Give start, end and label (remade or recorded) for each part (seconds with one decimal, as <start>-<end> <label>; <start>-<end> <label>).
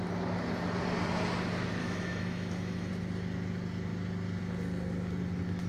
0.0-1.8 recorded; 1.8-2.9 remade; 2.9-5.7 recorded